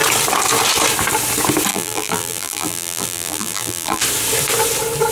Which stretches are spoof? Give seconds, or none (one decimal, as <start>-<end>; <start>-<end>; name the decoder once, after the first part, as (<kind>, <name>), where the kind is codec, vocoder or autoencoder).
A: 1.7-4.0 (vocoder, BigVGAN v2)